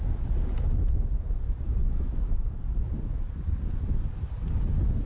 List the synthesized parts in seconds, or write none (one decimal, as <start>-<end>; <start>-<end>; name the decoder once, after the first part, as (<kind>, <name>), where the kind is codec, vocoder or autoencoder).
none